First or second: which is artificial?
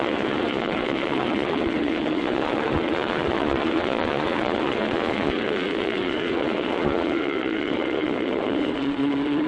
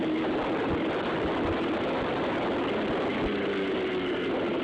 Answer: first